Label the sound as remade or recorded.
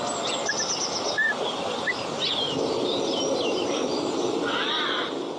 recorded